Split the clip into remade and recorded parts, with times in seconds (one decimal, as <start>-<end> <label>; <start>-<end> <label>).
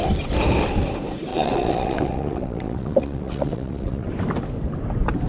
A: 0.0-1.3 recorded; 1.3-4.1 remade; 4.1-5.3 recorded